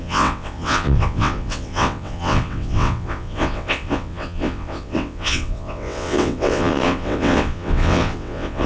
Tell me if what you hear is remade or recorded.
remade